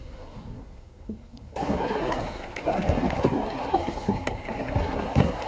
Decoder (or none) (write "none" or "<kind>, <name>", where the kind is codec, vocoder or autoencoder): codec, SNAC